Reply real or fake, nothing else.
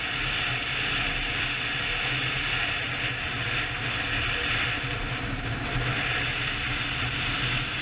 real